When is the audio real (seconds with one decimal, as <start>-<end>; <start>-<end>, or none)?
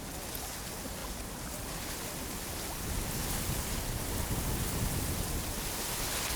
0.0-6.4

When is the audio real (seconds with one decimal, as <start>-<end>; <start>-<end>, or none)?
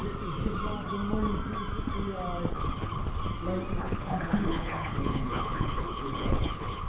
0.0-2.5; 3.2-3.8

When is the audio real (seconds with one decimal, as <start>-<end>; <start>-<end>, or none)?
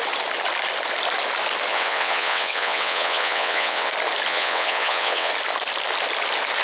0.0-1.7; 3.9-4.3; 5.3-6.6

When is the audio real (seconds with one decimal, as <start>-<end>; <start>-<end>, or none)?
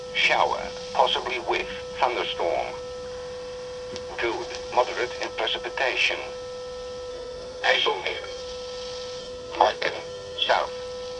0.0-7.1; 8.4-9.2; 10.5-11.2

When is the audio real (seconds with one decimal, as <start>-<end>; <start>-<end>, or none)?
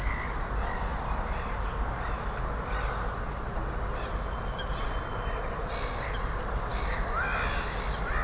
0.0-8.2